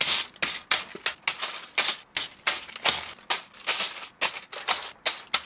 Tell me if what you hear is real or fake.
real